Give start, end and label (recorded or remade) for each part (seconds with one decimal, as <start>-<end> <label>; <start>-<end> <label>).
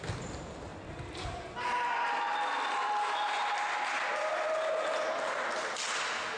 0.0-6.4 recorded